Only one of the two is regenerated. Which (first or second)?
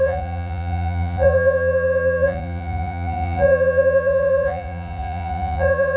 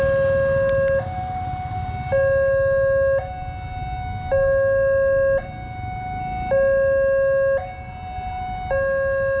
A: first